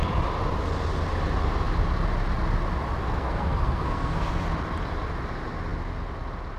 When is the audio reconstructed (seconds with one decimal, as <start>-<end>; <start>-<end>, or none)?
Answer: 3.0-4.3